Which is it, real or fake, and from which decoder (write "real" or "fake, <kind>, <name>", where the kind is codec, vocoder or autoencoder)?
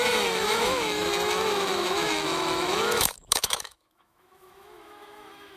fake, autoencoder, DAC-VAE